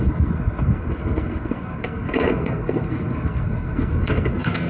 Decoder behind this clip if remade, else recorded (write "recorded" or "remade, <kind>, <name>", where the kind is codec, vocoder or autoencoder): remade, codec, SNAC